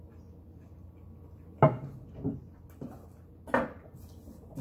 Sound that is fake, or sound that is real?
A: real